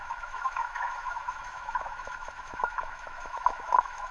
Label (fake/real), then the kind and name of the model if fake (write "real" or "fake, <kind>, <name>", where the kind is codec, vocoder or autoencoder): fake, autoencoder, DAC-VAE